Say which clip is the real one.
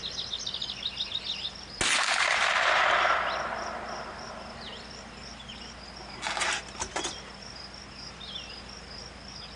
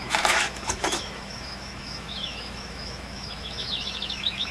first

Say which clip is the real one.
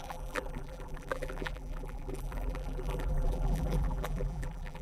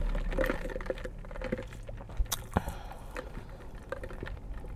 second